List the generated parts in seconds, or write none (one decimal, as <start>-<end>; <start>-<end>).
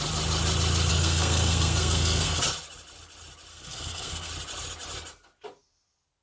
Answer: 0.9-2.4; 3.5-4.3